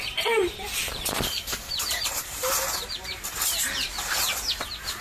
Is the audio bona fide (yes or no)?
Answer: no